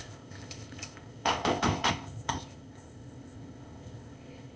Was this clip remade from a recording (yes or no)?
yes